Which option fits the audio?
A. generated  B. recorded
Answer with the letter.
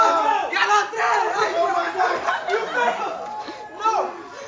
B